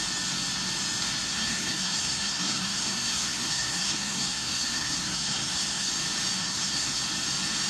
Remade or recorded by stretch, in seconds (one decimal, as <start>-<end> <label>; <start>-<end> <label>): 0.0-1.3 recorded; 1.3-5.9 remade; 5.9-6.4 recorded; 6.4-7.0 remade; 7.0-7.7 recorded